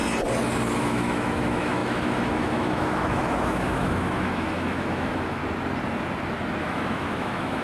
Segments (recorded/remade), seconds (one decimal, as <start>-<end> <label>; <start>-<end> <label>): 0.0-0.8 recorded; 0.8-5.4 remade; 5.4-6.6 recorded; 6.6-7.6 remade

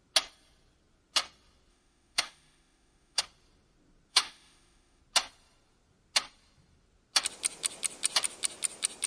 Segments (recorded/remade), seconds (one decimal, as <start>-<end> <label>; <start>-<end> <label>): 0.0-1.7 recorded; 1.7-3.2 remade; 3.2-4.1 recorded; 4.1-5.0 remade; 5.0-9.1 recorded

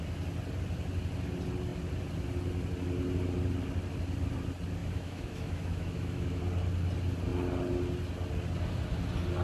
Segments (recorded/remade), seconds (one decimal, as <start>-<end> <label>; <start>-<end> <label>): 0.0-4.8 recorded; 4.8-6.4 remade; 6.4-9.4 recorded

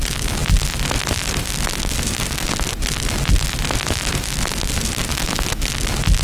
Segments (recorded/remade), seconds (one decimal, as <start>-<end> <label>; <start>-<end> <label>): 0.0-5.1 recorded; 5.1-5.7 remade; 5.7-6.2 recorded